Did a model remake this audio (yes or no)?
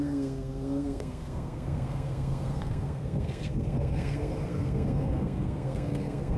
yes